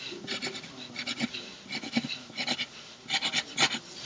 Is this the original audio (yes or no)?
yes